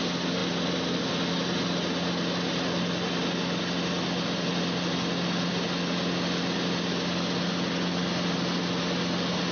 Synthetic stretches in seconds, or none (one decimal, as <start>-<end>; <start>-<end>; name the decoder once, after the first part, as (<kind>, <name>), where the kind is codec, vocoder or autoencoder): none